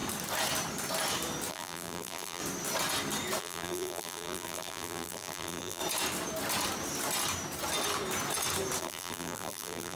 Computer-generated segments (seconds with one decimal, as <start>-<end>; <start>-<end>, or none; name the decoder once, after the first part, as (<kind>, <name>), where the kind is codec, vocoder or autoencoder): 1.5-2.4 (vocoder, BigVGAN v2); 3.4-5.8; 8.8-10.0